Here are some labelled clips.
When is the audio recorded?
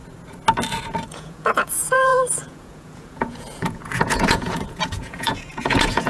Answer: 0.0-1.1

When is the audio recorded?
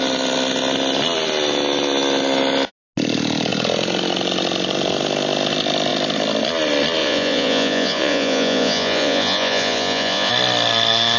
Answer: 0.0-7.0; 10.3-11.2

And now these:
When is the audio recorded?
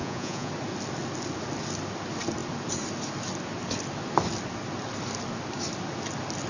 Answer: 0.5-6.5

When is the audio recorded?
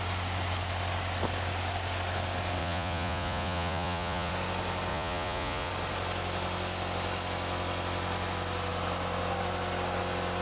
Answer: 0.0-2.6; 4.3-4.9; 5.7-10.4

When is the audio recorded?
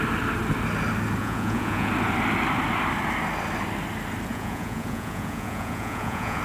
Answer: 0.0-1.2; 1.9-4.3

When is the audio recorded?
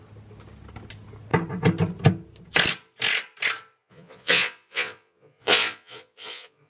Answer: 0.0-3.8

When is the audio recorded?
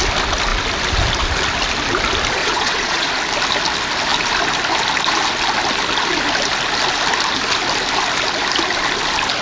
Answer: 0.0-2.4; 3.1-9.4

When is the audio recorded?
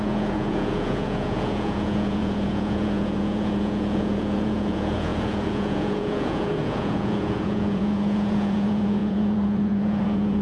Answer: none